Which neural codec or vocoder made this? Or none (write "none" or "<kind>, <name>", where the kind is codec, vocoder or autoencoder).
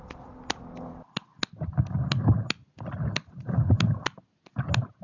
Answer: none